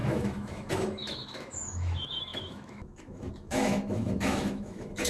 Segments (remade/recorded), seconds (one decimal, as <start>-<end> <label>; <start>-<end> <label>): 0.0-5.1 remade

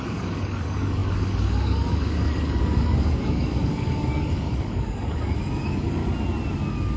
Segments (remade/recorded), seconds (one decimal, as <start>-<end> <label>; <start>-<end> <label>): 0.0-6.0 remade; 6.0-7.0 recorded

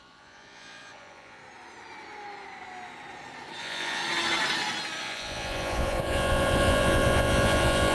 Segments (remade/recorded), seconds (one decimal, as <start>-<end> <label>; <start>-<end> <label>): 0.0-1.4 remade; 1.4-3.6 recorded; 3.6-4.0 remade; 4.0-5.0 recorded; 5.0-7.9 remade

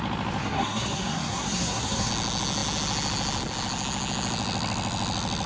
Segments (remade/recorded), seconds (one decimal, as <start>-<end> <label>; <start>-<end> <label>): 0.0-0.4 recorded; 0.4-2.1 remade; 2.1-5.5 recorded

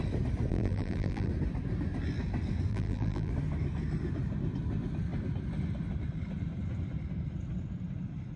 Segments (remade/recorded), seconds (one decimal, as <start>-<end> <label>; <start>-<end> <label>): 0.0-0.5 recorded; 0.5-1.3 remade; 1.3-2.7 recorded; 2.7-3.3 remade; 3.3-8.4 recorded

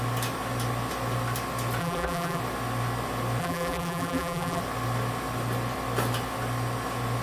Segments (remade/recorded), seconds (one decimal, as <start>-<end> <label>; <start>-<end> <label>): 0.0-1.8 recorded; 1.8-2.4 remade; 2.4-3.4 recorded; 3.4-4.6 remade; 4.6-7.2 recorded

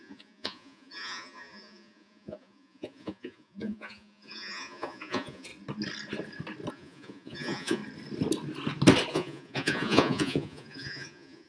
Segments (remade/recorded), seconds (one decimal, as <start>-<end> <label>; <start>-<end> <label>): 0.0-5.5 remade; 5.5-6.7 recorded; 6.7-7.8 remade; 7.8-9.1 recorded; 9.1-11.5 remade